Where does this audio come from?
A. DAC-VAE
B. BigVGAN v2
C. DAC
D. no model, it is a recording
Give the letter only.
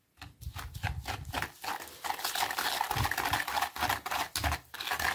D